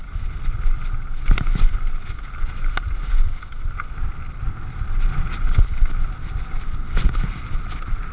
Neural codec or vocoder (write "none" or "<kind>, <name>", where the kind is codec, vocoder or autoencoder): none